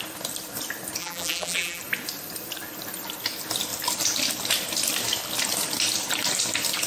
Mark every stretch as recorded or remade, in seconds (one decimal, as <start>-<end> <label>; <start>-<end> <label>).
0.0-1.0 recorded; 1.0-1.8 remade; 1.8-6.9 recorded